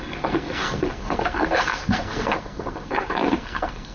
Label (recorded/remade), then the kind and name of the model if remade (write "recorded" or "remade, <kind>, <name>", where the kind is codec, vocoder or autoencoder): remade, codec, SNAC